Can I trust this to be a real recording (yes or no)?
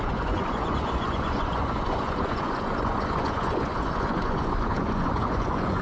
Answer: no